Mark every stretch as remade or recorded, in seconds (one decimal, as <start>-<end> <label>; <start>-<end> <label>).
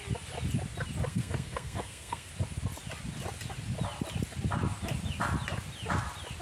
0.0-1.1 recorded; 1.1-2.3 remade; 2.3-6.4 recorded